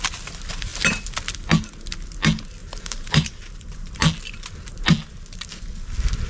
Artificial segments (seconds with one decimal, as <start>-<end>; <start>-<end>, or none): 2.6-3.9